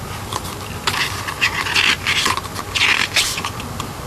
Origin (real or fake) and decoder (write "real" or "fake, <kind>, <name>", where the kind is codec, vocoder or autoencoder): real